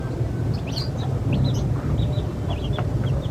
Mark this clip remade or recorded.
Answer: recorded